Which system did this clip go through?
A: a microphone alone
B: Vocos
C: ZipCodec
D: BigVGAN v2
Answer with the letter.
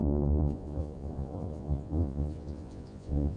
B